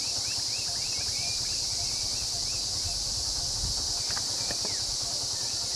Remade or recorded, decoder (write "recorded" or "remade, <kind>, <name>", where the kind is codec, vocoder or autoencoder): recorded